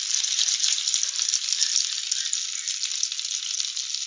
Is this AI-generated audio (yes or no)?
no